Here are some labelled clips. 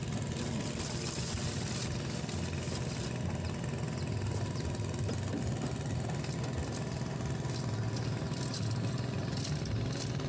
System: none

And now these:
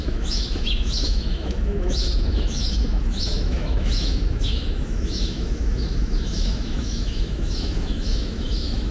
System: autoencoder, DAC-VAE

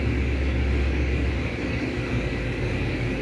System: codec, DAC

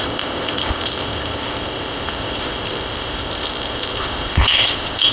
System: codec, ZipCodec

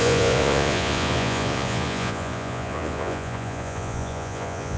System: vocoder, Vocos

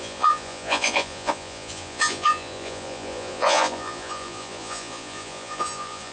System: vocoder, Vocos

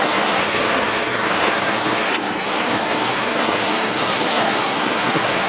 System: codec, SNAC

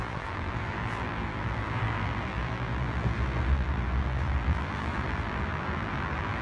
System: vocoder, BigVGAN v2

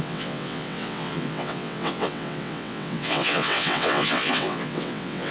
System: vocoder, WaveNeXt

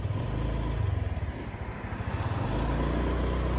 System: none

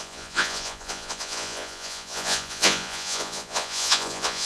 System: vocoder, Vocos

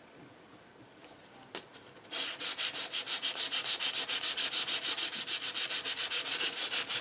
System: none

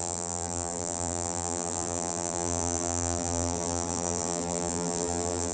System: vocoder, BigVGAN v2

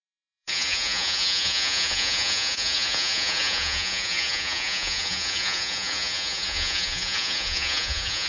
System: vocoder, Vocos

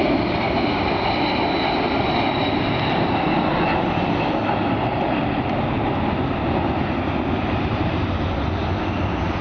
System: none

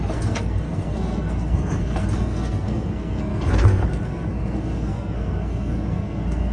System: codec, SNAC